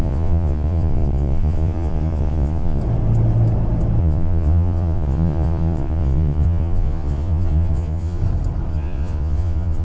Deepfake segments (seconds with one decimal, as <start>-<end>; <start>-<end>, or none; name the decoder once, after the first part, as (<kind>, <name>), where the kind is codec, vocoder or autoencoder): 0.0-2.8 (vocoder, Vocos); 4.0-8.2; 8.7-9.8